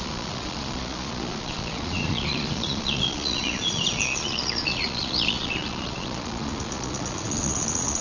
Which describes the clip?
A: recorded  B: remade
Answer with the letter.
B